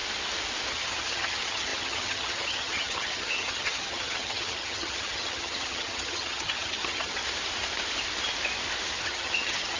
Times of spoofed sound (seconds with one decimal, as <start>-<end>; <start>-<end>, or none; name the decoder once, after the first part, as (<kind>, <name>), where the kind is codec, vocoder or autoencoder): 0.7-7.2 (vocoder, HiFi-GAN); 9.0-9.8